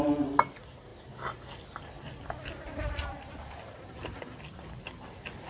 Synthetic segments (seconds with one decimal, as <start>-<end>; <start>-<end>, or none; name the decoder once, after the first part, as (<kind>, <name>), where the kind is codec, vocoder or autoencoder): none